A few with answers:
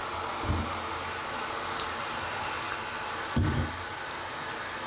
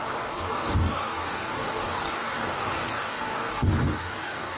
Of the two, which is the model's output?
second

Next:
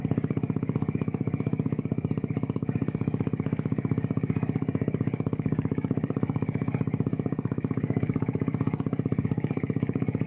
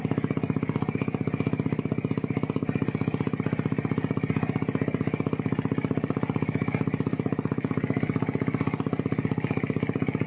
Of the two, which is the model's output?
first